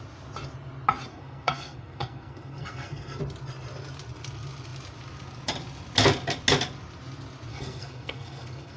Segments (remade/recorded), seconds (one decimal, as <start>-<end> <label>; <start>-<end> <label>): 0.0-1.1 recorded; 1.1-3.2 remade; 3.2-7.5 recorded; 7.5-8.8 remade